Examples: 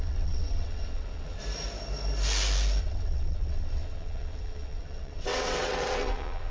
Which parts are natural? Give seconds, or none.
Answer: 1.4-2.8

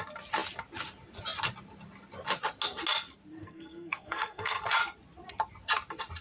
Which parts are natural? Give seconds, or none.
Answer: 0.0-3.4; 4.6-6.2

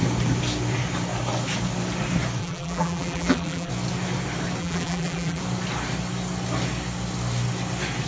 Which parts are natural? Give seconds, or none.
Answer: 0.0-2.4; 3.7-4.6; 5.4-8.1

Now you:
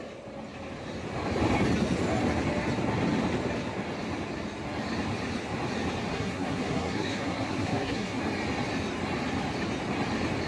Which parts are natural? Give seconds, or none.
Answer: 0.0-6.1; 8.2-10.5

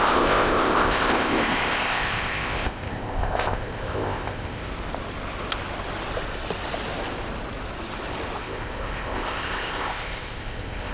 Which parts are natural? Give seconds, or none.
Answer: 4.7-8.4